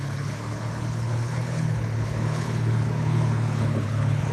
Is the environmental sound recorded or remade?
remade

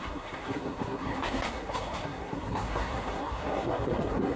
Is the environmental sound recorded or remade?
remade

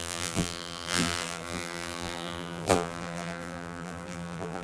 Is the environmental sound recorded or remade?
remade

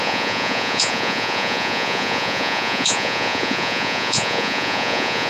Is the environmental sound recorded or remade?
remade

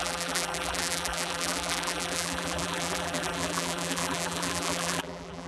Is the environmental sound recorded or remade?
remade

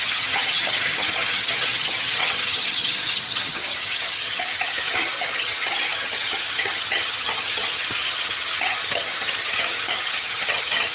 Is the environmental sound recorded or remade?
remade